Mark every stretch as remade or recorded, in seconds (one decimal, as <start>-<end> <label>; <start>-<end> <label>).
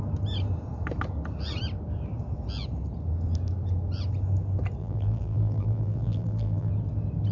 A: 0.0-4.8 recorded; 4.8-6.7 remade; 6.7-7.3 recorded